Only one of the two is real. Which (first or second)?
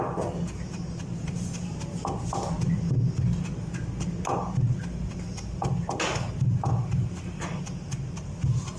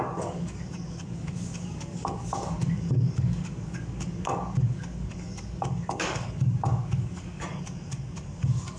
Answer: first